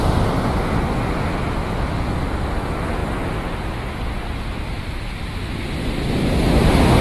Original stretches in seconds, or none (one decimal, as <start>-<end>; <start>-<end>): 0.0-7.0